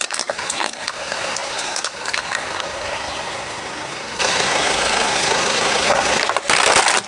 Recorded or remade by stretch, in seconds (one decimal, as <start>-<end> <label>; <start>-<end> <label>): 0.0-6.2 remade; 6.2-7.1 recorded